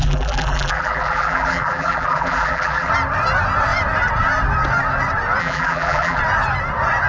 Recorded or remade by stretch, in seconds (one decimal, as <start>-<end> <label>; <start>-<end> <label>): 0.0-2.9 remade; 2.9-5.4 recorded; 5.4-6.2 remade; 6.2-7.1 recorded